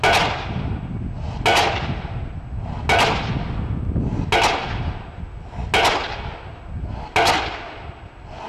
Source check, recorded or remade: recorded